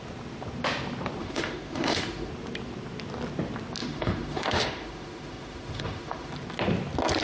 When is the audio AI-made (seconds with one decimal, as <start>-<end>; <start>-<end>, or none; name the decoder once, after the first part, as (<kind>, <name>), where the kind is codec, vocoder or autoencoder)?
1.2-2.3 (autoencoder, DAC-VAE); 3.8-6.3